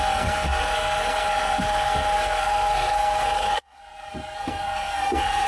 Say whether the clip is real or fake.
fake